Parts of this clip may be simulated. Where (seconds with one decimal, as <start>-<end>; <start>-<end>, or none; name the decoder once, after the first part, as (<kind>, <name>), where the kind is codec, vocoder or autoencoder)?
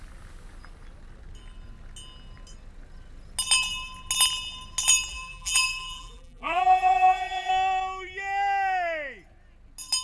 5.1-7.5 (vocoder, BigVGAN v2)